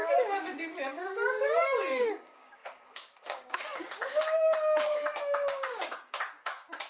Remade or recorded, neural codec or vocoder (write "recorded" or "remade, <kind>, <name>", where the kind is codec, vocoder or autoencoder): remade, codec, DAC